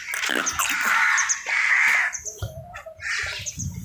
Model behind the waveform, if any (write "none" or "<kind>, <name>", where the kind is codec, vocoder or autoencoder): none